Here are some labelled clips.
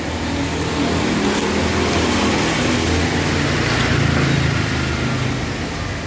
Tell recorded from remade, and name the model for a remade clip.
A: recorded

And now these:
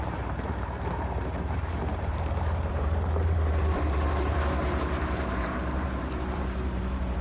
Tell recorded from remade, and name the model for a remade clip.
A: remade, vocoder, BigVGAN v2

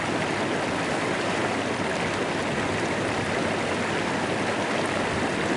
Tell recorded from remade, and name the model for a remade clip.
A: recorded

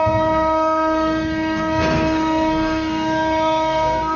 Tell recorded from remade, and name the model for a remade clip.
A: remade, codec, SNAC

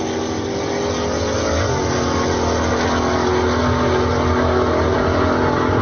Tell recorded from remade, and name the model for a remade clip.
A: recorded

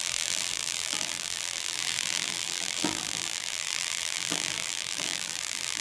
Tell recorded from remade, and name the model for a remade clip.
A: remade, vocoder, BigVGAN v2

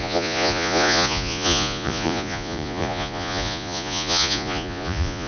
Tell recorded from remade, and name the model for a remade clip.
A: remade, vocoder, Vocos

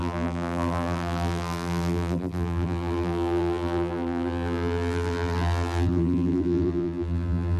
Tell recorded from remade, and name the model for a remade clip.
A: remade, vocoder, BigVGAN v2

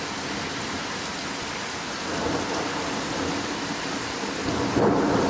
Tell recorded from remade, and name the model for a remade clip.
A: recorded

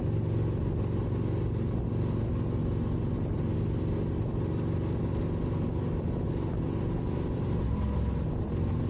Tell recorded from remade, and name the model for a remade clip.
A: recorded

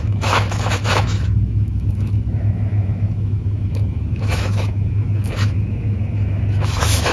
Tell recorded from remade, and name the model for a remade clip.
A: remade, autoencoder, DAC-VAE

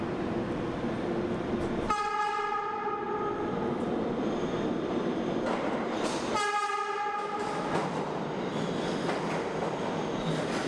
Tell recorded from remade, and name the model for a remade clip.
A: recorded